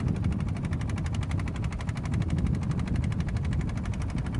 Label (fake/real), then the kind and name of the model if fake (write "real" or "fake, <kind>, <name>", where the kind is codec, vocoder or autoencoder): real